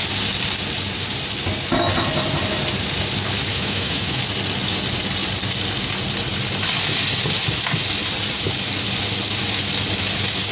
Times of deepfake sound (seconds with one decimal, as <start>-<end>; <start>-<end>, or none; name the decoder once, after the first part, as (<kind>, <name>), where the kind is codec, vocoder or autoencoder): 3.5-4.2 (autoencoder, DAC-VAE)